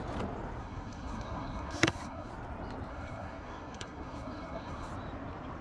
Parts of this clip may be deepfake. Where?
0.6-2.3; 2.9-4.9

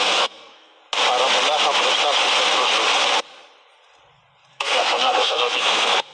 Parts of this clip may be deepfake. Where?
0.0-0.8; 4.5-6.1